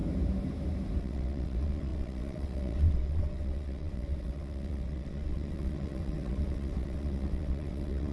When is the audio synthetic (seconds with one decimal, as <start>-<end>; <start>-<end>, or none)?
1.0-8.1